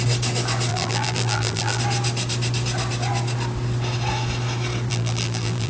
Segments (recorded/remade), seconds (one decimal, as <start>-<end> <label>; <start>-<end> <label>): 0.0-0.7 recorded; 0.7-1.8 remade; 1.8-4.9 recorded; 4.9-5.7 remade